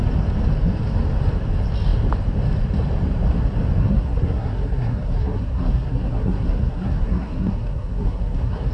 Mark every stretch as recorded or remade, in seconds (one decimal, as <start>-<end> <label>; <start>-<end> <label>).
0.0-3.8 recorded; 3.8-8.7 remade